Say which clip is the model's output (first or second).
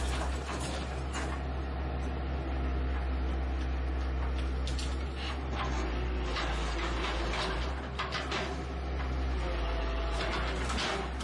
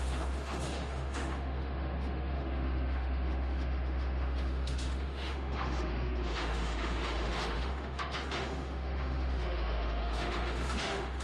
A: second